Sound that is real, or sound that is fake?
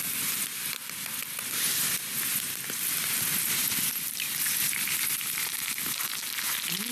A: real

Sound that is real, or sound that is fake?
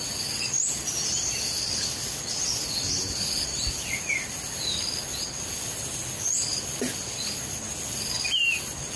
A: real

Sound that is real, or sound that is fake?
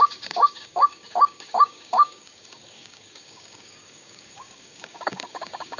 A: fake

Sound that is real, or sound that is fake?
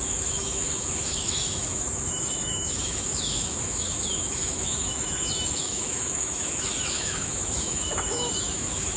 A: fake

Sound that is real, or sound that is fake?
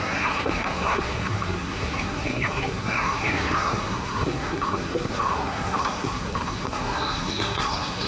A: fake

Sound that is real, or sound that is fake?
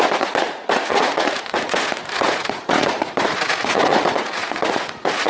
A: fake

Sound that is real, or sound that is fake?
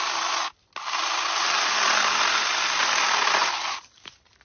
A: real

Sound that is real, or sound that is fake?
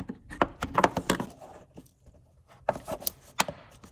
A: real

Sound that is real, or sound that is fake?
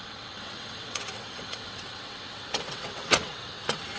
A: fake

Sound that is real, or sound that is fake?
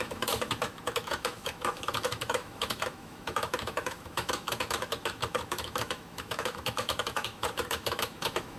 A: fake